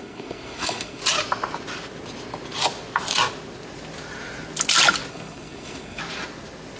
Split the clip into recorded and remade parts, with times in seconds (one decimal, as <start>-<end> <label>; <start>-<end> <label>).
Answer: 0.0-1.0 remade; 1.0-5.1 recorded; 5.1-6.0 remade; 6.0-6.8 recorded